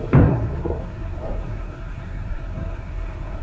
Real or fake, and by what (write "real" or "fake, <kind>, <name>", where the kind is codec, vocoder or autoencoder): fake, codec, SNAC